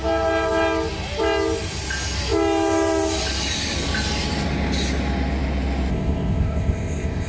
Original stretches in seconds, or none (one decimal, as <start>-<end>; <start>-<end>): 0.0-5.9